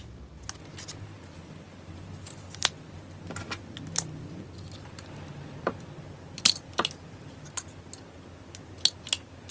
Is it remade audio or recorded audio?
recorded